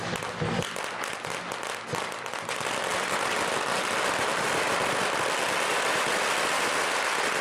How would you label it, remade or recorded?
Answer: recorded